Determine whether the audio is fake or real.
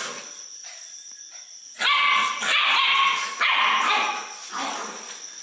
real